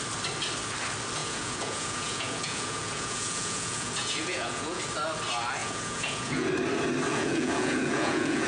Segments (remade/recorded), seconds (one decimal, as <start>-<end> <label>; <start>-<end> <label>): 0.0-1.2 recorded; 1.2-4.8 remade; 4.8-5.6 recorded; 5.6-6.5 remade; 6.5-7.1 recorded; 7.1-8.5 remade